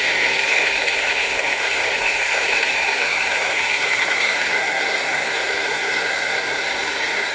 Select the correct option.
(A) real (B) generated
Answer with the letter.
B